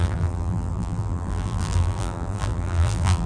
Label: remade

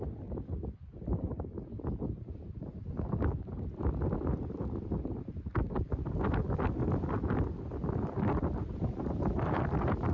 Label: recorded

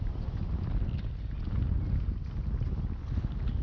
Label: recorded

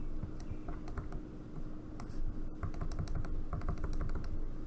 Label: recorded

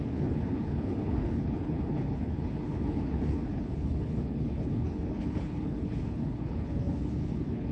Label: remade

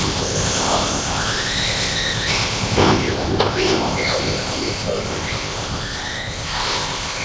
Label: remade